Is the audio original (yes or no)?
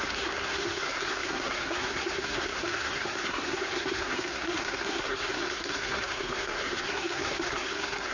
no